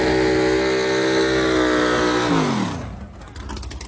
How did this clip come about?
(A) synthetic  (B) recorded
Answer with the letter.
B